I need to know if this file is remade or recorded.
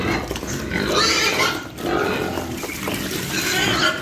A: recorded